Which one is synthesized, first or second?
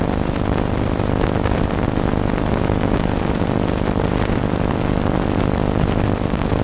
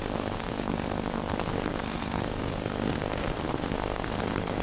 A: second